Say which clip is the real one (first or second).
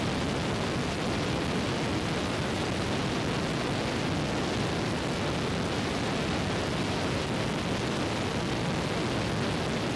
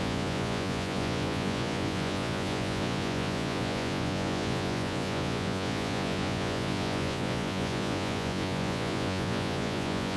first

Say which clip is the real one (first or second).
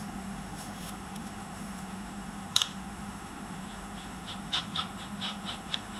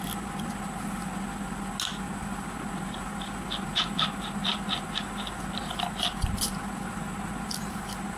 second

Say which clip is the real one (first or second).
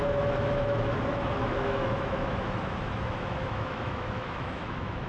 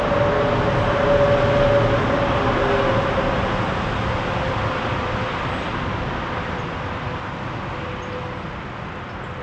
second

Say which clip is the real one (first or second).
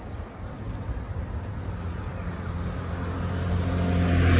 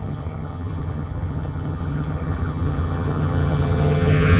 first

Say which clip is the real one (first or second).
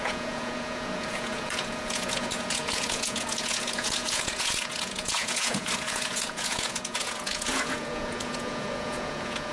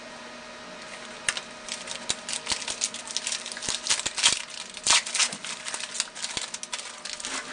second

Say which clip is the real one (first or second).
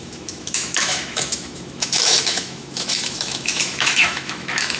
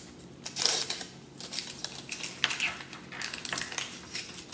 second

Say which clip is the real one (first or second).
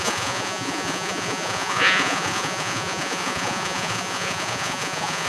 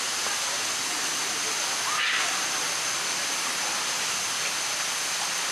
second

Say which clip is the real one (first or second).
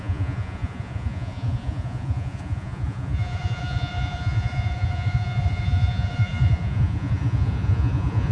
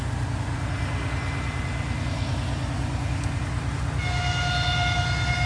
second